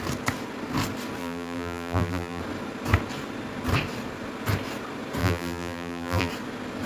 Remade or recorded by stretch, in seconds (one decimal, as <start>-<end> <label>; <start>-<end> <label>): 0.0-1.2 recorded; 1.2-2.4 remade; 2.4-5.2 recorded; 5.2-6.3 remade; 6.3-6.9 recorded